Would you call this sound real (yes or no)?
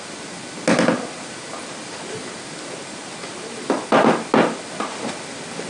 yes